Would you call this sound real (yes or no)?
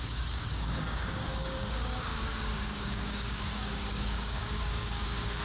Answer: no